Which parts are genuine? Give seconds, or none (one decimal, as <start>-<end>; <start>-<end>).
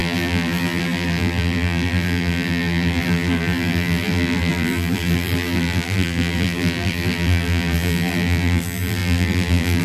none